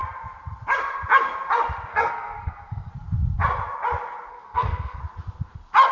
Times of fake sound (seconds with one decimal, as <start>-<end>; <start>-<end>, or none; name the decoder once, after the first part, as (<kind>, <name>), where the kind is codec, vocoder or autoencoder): 1.9-2.9 (codec, SNAC); 4.3-5.0